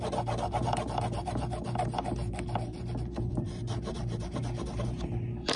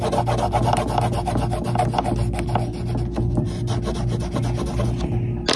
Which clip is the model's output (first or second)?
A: first